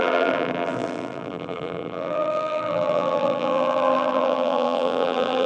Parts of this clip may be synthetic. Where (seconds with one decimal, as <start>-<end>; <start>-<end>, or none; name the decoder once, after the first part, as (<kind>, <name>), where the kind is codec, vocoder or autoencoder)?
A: 0.0-5.5 (vocoder, BigVGAN v2)